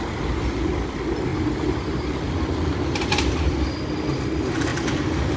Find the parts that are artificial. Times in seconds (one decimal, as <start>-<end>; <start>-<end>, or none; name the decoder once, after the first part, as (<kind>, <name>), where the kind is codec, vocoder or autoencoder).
none